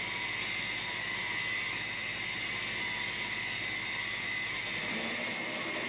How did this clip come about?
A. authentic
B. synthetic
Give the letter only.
A